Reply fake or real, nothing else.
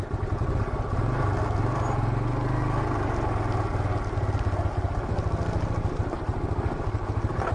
real